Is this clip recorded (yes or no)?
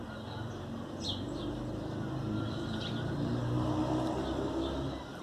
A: no